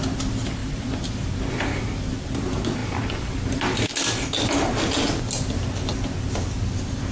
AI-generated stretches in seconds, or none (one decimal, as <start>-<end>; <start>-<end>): none